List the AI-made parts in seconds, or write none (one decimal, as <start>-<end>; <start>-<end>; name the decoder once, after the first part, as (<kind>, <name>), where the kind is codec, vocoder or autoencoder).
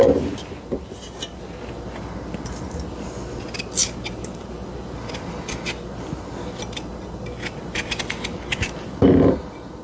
none